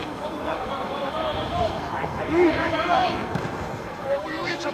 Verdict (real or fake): fake